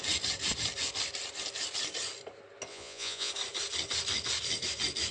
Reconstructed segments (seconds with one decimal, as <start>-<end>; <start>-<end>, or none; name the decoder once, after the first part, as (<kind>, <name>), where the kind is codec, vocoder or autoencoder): 2.7-3.3 (vocoder, Vocos)